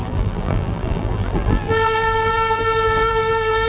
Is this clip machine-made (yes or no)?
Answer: yes